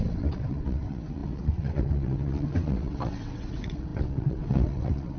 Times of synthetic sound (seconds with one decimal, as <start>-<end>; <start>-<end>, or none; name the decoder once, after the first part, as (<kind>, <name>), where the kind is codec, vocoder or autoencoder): 0.0-5.2 (vocoder, WaveNeXt)

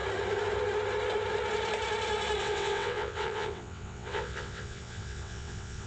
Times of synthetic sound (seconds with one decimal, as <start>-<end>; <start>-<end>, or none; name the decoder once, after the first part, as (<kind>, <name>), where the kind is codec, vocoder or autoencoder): 2.4-5.9 (vocoder, WaveNeXt)